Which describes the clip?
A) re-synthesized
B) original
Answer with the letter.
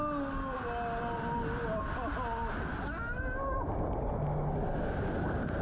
B